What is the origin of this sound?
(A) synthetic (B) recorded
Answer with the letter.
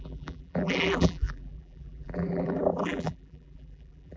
A